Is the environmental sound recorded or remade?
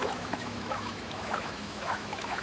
remade